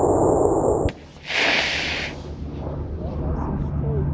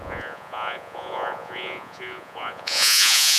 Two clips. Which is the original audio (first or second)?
first